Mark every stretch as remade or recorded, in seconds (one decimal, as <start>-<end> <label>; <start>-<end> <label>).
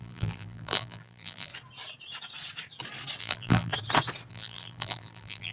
0.0-1.5 remade; 1.5-3.2 recorded; 3.2-3.7 remade; 3.7-4.3 recorded; 4.3-5.5 remade